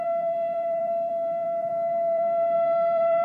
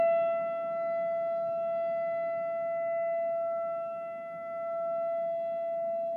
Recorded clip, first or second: second